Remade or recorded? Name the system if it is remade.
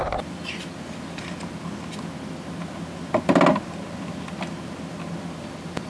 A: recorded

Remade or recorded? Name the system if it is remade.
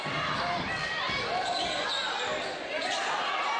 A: recorded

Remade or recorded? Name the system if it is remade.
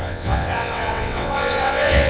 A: remade, vocoder, WaveNeXt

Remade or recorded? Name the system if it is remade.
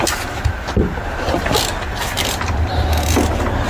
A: recorded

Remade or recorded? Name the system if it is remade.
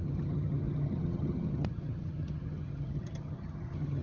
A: remade, vocoder, HiFi-GAN